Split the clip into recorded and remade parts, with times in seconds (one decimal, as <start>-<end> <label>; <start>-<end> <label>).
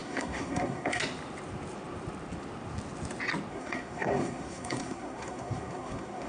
0.0-1.0 remade; 1.0-3.5 recorded; 3.5-6.3 remade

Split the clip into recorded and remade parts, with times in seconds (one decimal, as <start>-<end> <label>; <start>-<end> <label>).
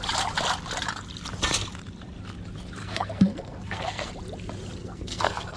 0.0-2.8 recorded; 2.8-4.1 remade; 4.1-4.8 recorded; 4.8-5.6 remade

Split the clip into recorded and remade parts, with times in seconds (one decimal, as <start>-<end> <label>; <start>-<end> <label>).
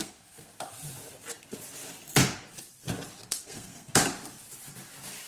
0.0-0.5 remade; 0.5-3.4 recorded; 3.4-4.0 remade; 4.0-5.3 recorded